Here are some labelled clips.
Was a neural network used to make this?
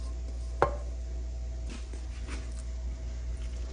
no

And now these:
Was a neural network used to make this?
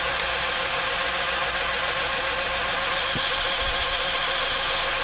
no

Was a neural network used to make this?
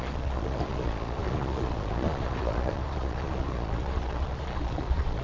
yes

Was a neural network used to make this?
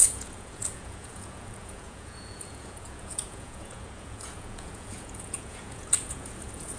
yes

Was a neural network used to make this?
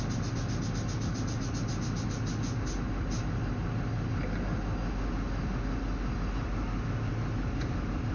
no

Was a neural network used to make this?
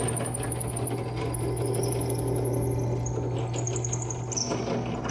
no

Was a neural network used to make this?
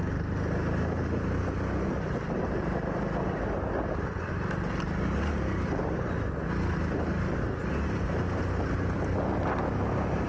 no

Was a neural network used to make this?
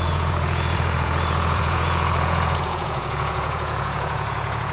yes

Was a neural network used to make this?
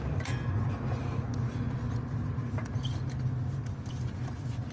no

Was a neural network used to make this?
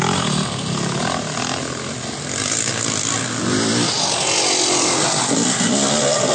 no